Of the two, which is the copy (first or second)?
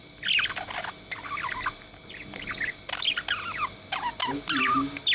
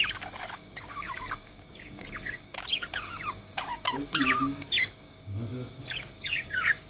second